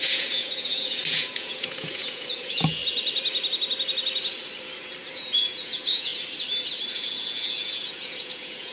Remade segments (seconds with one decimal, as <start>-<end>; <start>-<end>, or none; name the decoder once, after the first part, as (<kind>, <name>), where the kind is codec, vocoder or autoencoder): 0.0-2.8 (vocoder, Vocos); 5.1-6.1; 6.9-8.7